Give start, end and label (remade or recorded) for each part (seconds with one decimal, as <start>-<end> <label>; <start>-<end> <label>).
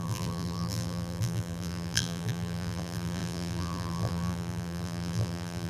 0.0-5.7 remade